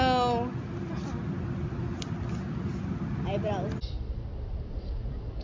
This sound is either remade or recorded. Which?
recorded